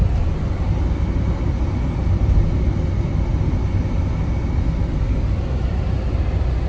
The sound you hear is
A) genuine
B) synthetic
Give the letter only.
A